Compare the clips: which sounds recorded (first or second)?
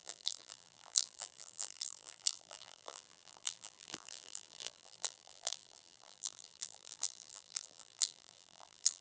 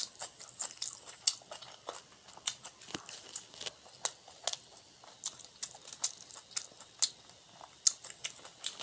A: second